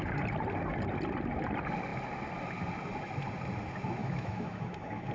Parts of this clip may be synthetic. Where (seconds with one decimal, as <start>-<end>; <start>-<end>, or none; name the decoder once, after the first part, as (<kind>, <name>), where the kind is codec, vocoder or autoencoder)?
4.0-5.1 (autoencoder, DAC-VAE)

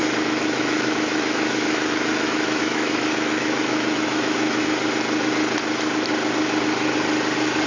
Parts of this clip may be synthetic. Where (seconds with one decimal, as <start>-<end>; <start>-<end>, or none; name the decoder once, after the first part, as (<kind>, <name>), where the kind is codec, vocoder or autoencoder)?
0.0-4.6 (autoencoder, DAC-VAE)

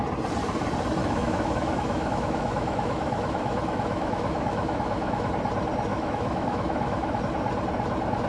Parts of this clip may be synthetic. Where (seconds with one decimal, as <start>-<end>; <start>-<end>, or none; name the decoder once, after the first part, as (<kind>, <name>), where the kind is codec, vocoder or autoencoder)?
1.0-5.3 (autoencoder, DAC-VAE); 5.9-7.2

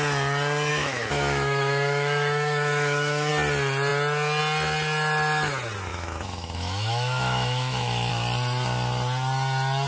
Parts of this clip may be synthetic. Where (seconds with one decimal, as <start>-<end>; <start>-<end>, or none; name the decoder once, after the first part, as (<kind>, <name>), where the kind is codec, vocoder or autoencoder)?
0.7-3.3 (autoencoder, DAC-VAE); 5.9-8.1

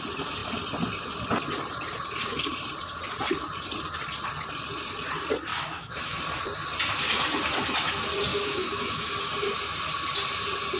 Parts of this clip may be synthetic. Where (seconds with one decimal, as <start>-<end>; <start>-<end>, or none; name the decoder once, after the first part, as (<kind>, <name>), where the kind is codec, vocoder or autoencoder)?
5.5-6.2 (autoencoder, DAC-VAE); 8.3-9.1